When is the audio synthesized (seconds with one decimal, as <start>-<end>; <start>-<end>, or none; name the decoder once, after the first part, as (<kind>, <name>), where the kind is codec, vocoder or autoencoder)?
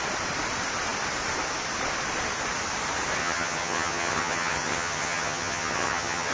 3.2-6.3 (vocoder, HiFi-GAN)